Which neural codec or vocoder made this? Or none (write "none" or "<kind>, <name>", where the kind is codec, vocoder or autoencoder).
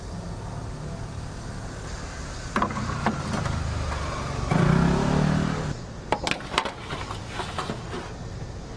none